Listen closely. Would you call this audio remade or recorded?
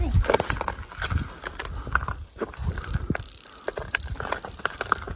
recorded